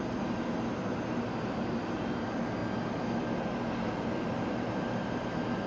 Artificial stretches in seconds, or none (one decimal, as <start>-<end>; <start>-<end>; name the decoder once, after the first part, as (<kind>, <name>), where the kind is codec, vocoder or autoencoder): 0.0-2.6 (vocoder, BigVGAN v2); 3.2-5.7